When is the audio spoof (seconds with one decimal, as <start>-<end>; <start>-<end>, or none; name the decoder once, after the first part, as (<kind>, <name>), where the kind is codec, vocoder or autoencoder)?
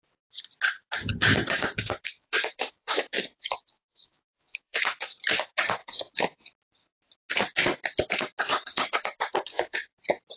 1.1-4.9 (codec, DAC); 5.8-6.5; 8.5-9.9